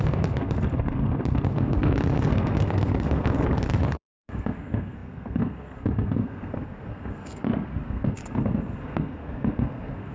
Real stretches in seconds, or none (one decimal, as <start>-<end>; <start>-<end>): none

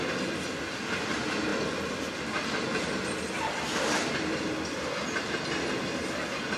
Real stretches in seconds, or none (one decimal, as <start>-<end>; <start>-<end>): 0.0-6.6

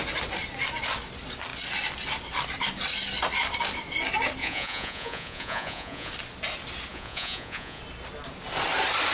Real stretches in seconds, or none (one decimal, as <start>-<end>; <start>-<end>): 0.0-4.4; 6.1-6.9; 7.8-9.1

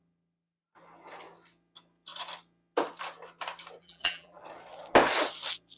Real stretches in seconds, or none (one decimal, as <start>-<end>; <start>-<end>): 0.0-3.8; 4.4-5.8